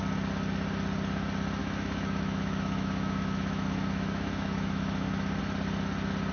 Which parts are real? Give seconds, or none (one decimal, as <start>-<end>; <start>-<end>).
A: 0.0-1.6; 5.4-6.3